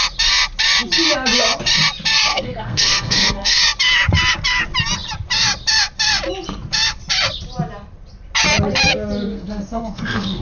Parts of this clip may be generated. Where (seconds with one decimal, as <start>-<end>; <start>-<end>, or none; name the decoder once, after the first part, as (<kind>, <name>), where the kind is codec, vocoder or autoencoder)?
2.3-3.6 (codec, SNAC); 9.3-10.4